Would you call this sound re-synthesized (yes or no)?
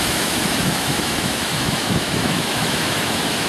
yes